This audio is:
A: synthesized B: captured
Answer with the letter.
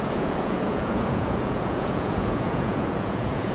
A